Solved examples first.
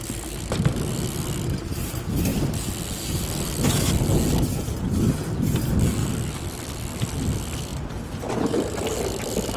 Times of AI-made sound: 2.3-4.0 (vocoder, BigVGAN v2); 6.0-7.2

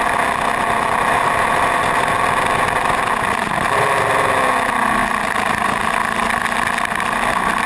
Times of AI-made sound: 1.1-2.1 (vocoder, BigVGAN v2); 3.4-4.2; 5.0-5.9

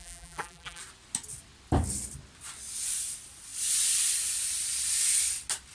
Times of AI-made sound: 0.0-0.8 (vocoder, BigVGAN v2)

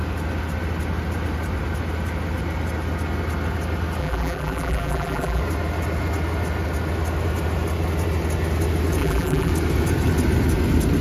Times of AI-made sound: 4.0-5.4 (vocoder, BigVGAN v2); 9.0-9.5

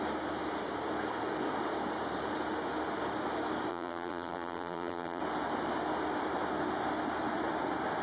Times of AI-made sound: 3.7-5.2 (vocoder, BigVGAN v2)

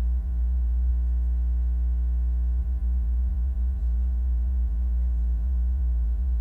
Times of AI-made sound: 0.0-0.9 (vocoder, BigVGAN v2); 2.6-6.4

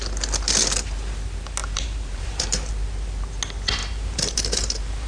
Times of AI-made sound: 1.6-2.7 (vocoder, BigVGAN v2); 3.8-5.1